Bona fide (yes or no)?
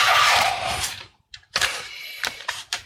no